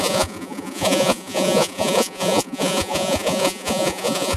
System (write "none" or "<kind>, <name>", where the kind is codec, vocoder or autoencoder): vocoder, Vocos